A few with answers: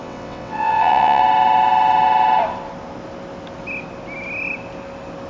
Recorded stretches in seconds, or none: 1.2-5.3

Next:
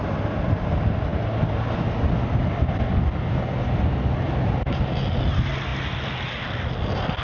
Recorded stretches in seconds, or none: 0.0-7.2

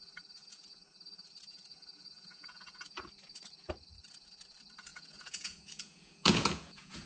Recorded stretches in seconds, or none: 0.0-0.4; 0.9-1.5; 3.0-4.9

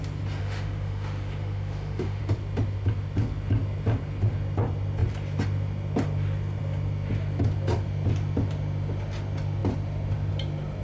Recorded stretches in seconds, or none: 0.0-0.4; 2.2-10.8

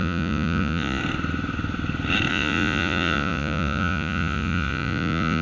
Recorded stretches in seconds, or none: 1.0-2.3

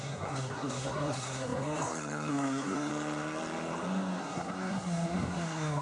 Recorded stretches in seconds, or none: 2.9-4.2

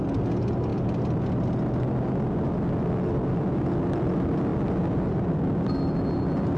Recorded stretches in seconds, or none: 0.0-6.6